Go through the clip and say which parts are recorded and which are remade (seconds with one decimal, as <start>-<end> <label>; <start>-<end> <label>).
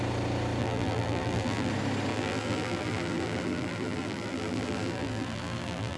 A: 0.0-0.6 recorded; 0.6-1.7 remade; 1.7-2.1 recorded; 2.1-6.0 remade